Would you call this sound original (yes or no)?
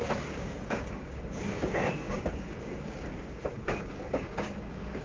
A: no